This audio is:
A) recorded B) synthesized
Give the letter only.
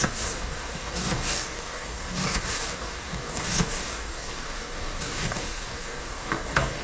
B